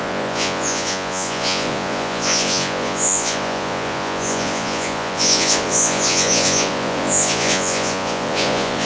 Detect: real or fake fake